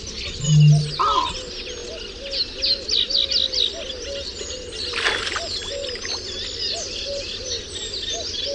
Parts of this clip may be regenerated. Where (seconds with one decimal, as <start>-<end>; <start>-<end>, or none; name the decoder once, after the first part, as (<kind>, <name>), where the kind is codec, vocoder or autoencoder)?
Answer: none

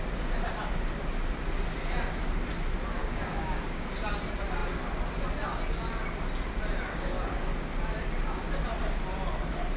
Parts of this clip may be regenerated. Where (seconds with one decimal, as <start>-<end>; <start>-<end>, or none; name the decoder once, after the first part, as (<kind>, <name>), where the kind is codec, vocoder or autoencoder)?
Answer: 3.0-4.0 (codec, DAC); 6.9-7.5

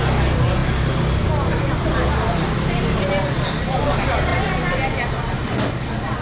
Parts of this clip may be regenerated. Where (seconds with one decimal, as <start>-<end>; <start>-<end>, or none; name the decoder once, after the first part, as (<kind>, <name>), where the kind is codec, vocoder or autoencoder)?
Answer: none

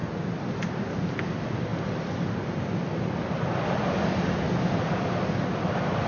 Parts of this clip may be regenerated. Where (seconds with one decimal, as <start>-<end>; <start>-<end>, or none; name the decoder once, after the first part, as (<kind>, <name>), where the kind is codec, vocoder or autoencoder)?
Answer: none